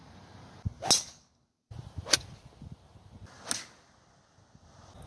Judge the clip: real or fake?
real